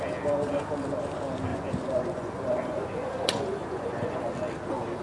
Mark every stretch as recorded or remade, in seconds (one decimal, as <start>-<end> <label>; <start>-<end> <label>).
0.0-1.5 recorded; 1.5-4.2 remade; 4.2-5.0 recorded